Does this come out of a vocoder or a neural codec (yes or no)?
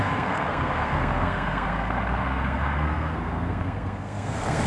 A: yes